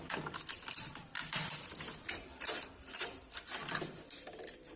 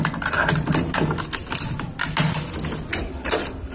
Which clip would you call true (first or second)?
second